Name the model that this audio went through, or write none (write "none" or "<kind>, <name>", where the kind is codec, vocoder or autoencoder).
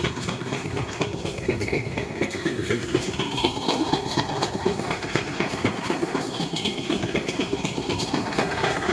codec, SNAC